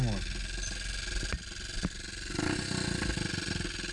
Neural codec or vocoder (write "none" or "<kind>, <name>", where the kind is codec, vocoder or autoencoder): none